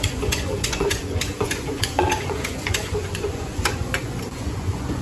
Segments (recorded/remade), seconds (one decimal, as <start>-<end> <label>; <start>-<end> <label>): 0.0-5.0 remade